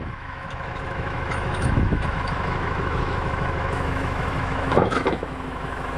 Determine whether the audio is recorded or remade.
remade